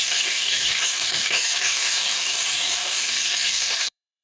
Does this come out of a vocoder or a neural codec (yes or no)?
yes